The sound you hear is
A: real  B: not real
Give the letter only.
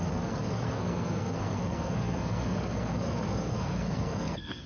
B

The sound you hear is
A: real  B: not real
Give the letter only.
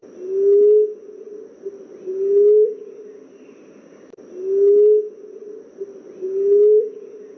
A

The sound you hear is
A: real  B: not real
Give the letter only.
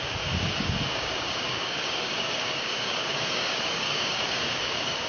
B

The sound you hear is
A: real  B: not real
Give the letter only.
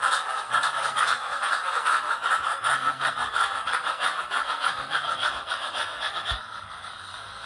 B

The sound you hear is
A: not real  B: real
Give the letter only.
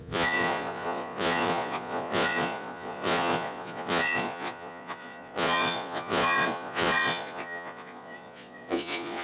A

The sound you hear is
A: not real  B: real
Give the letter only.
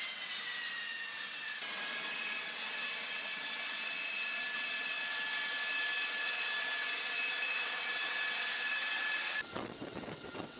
A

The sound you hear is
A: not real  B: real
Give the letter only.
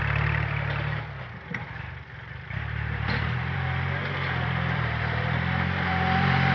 A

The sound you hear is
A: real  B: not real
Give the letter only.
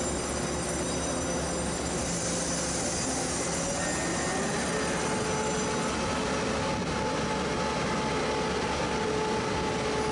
A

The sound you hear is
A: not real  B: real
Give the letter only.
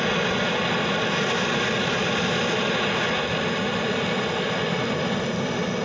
B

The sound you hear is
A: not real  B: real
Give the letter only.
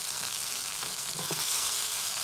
A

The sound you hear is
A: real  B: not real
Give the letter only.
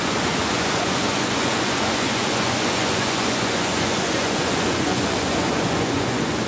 B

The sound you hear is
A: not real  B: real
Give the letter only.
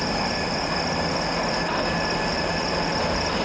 A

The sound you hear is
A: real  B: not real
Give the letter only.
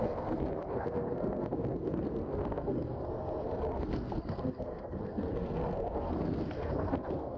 B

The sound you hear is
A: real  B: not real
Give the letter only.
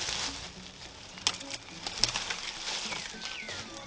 A